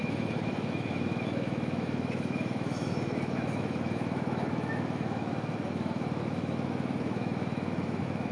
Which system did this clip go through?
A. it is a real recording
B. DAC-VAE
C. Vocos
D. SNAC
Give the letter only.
B